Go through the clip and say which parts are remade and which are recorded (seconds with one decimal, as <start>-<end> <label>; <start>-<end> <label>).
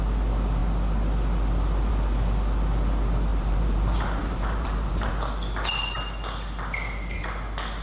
0.0-3.3 recorded; 3.3-5.1 remade; 5.1-7.8 recorded